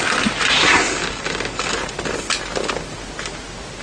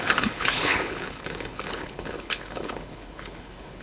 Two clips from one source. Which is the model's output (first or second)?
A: second